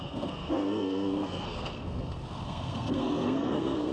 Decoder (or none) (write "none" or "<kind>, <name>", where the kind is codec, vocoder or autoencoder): codec, SNAC